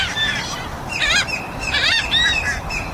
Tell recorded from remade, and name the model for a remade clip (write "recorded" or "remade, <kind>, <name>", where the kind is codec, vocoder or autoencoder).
remade, vocoder, BigVGAN v2